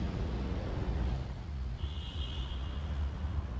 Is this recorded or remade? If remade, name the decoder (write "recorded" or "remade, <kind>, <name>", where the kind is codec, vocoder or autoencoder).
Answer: remade, vocoder, Vocos